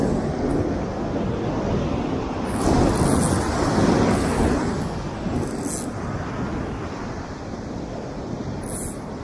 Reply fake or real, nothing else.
real